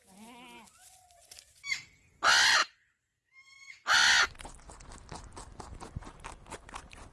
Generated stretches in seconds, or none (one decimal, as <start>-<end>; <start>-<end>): none